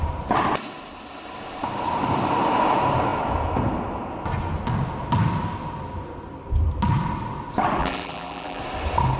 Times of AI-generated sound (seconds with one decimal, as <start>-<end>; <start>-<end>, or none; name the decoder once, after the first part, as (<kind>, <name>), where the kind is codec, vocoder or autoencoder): 7.8-8.6 (vocoder, BigVGAN v2)